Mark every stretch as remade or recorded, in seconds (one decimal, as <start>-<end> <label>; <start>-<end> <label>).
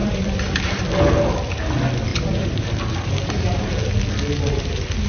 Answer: 0.0-0.8 remade; 0.8-2.1 recorded; 2.1-3.7 remade; 3.7-5.1 recorded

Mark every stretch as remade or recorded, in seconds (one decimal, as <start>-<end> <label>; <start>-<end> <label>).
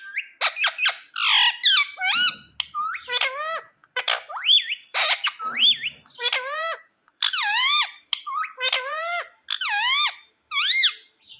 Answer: 0.0-3.8 recorded; 3.8-9.0 remade; 9.0-11.4 recorded